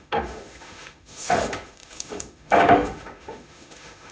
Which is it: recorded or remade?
remade